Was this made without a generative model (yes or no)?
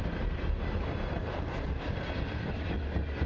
yes